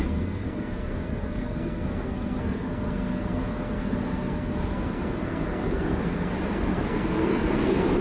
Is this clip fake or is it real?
fake